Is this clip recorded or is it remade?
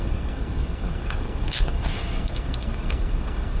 remade